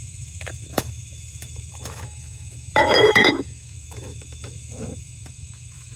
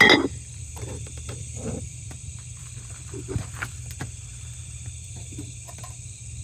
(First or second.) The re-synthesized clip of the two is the first